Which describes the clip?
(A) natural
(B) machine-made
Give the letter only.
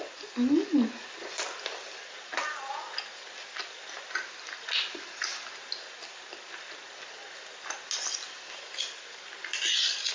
A